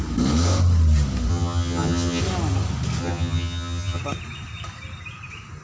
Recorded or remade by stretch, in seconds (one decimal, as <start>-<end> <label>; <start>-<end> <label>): 0.0-1.3 recorded; 1.3-2.2 remade; 2.2-3.0 recorded; 3.0-4.0 remade; 4.0-5.6 recorded

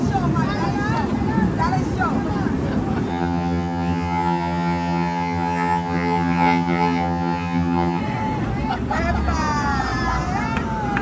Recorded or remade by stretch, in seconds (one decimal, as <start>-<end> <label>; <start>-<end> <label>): 0.0-3.1 recorded; 3.1-8.0 remade; 8.0-11.0 recorded

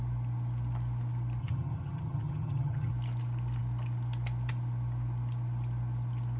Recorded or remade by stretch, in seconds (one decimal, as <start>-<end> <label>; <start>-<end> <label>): 0.0-1.4 recorded; 1.4-2.9 remade; 2.9-6.4 recorded

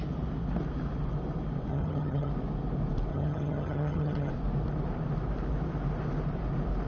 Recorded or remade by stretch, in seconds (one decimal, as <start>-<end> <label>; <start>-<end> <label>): 0.0-1.7 recorded; 1.7-2.3 remade; 2.3-3.1 recorded; 3.1-4.3 remade; 4.3-6.9 recorded

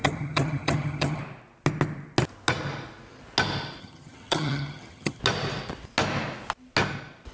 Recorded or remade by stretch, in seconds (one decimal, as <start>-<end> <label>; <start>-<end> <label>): 0.0-1.2 remade; 1.2-3.8 recorded; 3.8-5.2 remade; 5.2-7.3 recorded

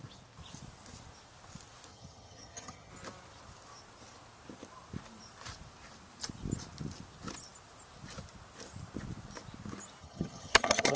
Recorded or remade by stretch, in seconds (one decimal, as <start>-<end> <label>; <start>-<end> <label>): 0.0-1.9 recorded; 1.9-2.9 remade; 2.9-10.0 recorded; 10.0-11.0 remade

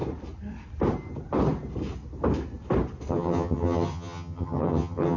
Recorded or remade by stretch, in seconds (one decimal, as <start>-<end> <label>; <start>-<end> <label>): 0.0-3.1 recorded; 3.1-5.2 remade